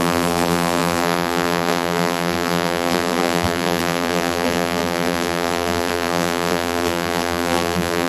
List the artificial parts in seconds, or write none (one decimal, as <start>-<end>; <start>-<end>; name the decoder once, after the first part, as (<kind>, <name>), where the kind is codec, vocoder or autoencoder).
0.0-8.1 (vocoder, BigVGAN v2)